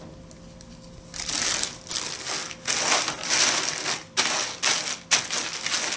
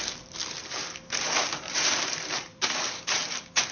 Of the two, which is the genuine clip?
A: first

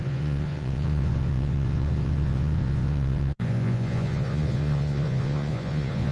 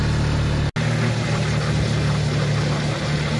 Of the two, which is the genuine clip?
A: second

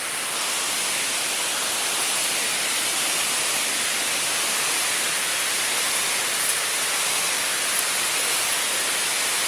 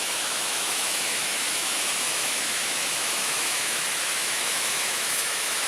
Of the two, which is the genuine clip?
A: first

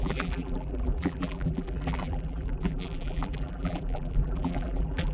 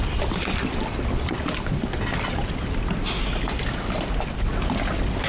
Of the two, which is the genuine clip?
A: second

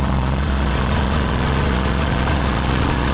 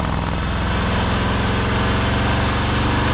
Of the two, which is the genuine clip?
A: second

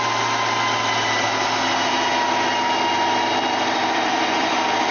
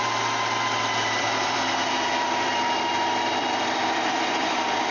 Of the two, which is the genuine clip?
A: first